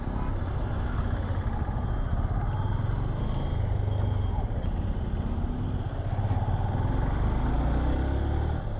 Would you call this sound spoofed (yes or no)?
no